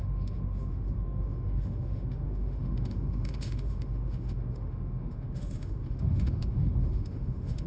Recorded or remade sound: remade